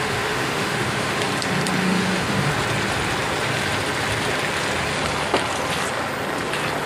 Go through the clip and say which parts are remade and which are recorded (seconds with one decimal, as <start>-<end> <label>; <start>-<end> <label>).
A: 0.0-1.3 remade; 1.3-1.8 recorded; 1.8-2.5 remade; 2.5-6.9 recorded